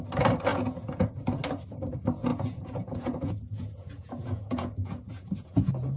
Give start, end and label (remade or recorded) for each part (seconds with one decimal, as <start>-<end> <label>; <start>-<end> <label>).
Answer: 0.0-0.5 recorded; 0.5-1.1 remade; 1.1-2.3 recorded; 2.3-6.0 remade

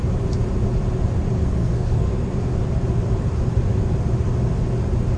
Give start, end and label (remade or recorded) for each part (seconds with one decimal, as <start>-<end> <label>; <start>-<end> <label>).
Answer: 0.0-1.4 recorded; 1.4-2.3 remade; 2.3-5.2 recorded